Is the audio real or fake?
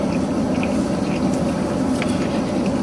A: real